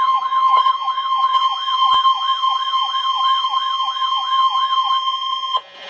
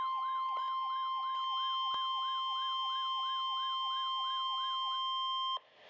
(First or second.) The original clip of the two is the second